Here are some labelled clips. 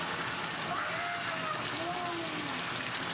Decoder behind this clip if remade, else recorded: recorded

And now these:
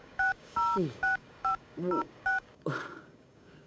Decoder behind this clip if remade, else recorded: remade, codec, DAC